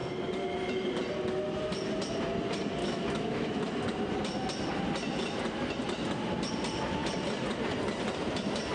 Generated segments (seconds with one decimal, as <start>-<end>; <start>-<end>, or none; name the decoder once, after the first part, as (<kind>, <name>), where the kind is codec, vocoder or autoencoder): 2.8-3.6 (autoencoder, DAC-VAE)